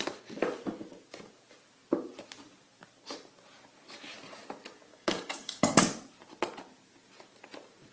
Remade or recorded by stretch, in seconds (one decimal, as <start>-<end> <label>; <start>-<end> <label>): 0.0-4.9 recorded; 4.9-5.8 remade; 5.8-7.9 recorded